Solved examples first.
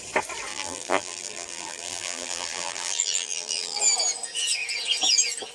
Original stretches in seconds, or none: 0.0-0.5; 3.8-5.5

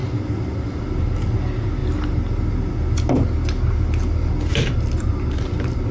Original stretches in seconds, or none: 0.0-4.5

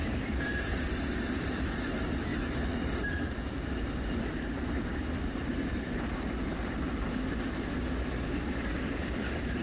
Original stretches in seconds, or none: 2.3-4.2; 6.5-8.9

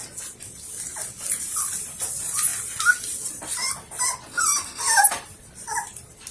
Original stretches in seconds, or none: 0.0-1.4

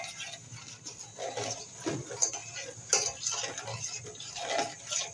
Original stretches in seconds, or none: 0.0-5.1

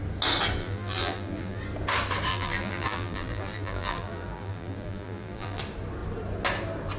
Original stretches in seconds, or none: 0.0-0.6; 1.6-2.3; 5.6-7.0

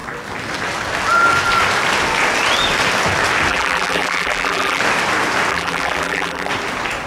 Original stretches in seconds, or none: 0.0-3.5; 4.8-5.5; 6.5-7.1